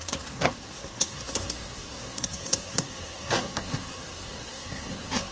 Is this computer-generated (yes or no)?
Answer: yes